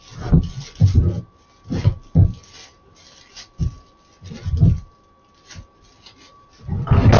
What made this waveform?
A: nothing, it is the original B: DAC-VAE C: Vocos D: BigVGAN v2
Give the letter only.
A